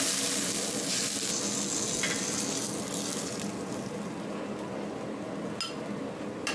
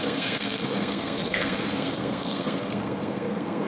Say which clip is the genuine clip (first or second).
first